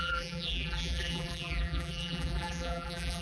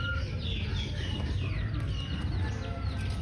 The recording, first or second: second